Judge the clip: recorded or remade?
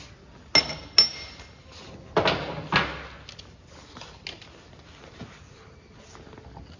recorded